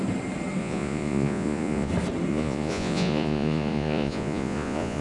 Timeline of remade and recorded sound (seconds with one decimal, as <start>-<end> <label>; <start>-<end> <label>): 0.0-0.6 recorded; 0.6-1.9 remade; 1.9-2.3 recorded; 2.3-5.0 remade